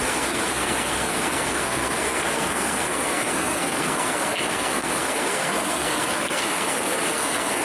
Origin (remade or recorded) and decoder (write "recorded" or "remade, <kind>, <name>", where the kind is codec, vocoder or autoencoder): remade, codec, SNAC